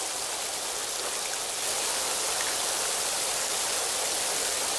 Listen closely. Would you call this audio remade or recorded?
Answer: recorded